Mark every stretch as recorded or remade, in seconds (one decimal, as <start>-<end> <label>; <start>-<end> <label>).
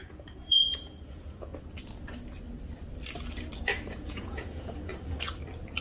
0.0-1.5 remade; 1.5-3.9 recorded; 3.9-4.9 remade; 4.9-5.8 recorded